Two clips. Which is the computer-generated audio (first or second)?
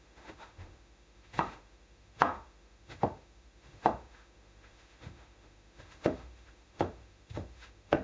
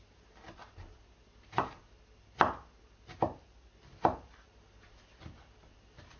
first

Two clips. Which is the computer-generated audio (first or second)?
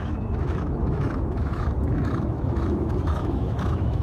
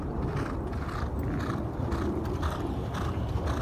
first